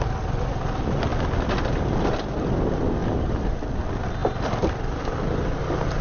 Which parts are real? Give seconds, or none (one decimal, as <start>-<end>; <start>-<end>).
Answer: 0.0-3.0; 3.5-4.2; 5.6-6.0